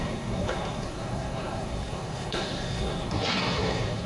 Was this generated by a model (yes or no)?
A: yes